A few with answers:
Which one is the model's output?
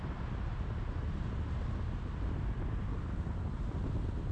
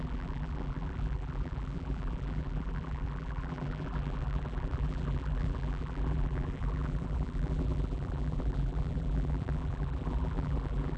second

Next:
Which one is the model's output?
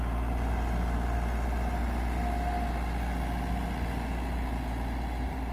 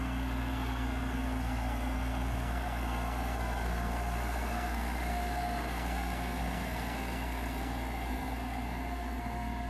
second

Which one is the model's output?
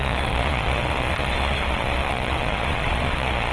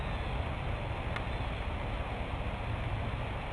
first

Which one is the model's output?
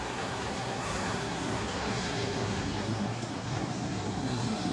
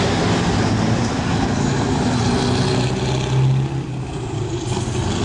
first